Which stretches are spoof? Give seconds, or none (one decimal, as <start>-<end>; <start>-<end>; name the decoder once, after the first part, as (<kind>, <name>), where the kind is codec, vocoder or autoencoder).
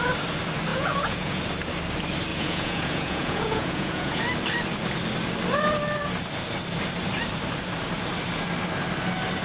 0.7-1.4 (vocoder, Vocos); 2.3-4.2